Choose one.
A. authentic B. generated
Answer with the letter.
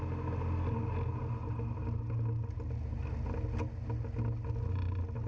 A